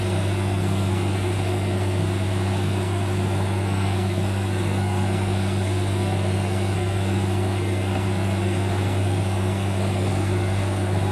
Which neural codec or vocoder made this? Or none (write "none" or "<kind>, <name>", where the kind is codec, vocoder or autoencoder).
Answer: codec, SNAC